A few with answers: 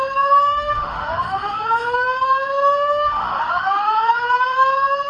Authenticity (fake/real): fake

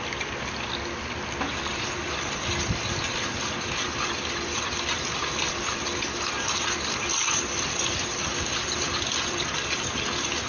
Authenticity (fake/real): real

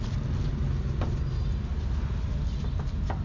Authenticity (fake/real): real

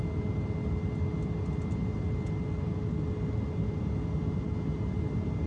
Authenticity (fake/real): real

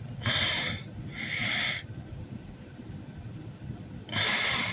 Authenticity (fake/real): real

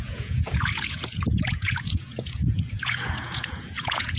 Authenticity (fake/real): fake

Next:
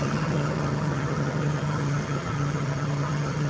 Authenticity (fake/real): fake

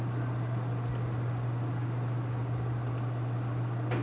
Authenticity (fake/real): real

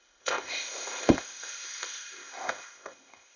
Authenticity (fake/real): fake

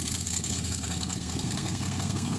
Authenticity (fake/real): fake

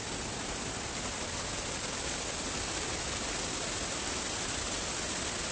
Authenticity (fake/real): real